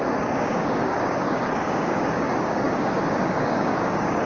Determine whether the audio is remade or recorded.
remade